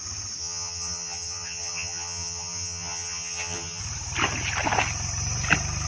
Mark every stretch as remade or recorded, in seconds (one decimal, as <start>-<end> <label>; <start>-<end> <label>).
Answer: 0.0-0.4 recorded; 0.4-3.8 remade; 3.8-5.9 recorded